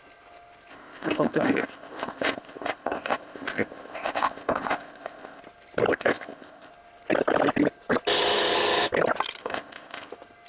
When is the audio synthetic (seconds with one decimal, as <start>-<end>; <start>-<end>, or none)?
0.7-5.4; 5.9-6.7; 9.4-10.1